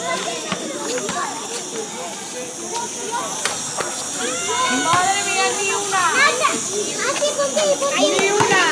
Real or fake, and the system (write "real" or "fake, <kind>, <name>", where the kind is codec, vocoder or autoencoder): real